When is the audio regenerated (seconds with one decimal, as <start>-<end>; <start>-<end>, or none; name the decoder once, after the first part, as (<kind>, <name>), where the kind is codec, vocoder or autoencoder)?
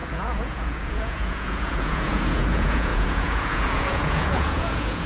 0.0-5.1 (vocoder, Vocos)